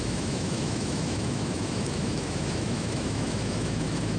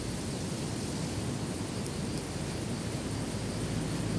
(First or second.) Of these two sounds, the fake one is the first